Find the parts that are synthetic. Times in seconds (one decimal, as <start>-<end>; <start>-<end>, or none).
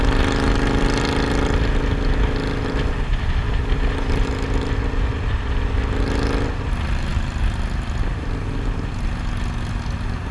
none